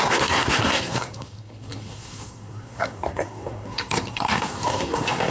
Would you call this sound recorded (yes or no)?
no